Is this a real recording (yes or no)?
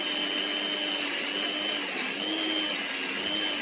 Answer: yes